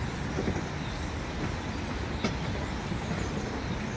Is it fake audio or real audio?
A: real